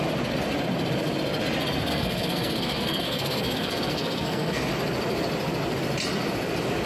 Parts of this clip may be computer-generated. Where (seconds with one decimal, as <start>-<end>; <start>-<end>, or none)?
1.9-4.7